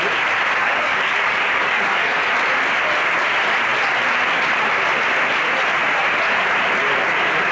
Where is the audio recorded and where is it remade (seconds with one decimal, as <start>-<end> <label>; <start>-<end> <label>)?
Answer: 0.0-0.6 recorded; 0.6-2.3 remade; 2.3-7.5 recorded